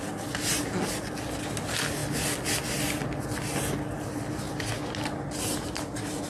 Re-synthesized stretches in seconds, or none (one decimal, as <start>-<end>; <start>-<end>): none